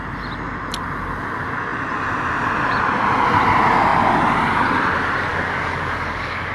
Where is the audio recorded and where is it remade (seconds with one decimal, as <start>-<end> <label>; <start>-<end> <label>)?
0.0-5.3 recorded; 5.3-6.5 remade